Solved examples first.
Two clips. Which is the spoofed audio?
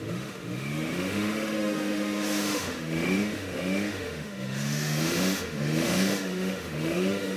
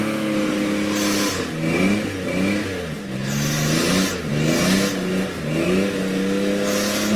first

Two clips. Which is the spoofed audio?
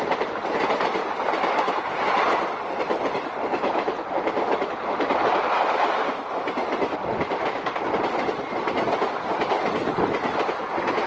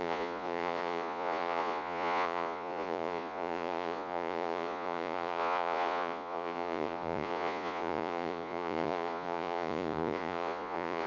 second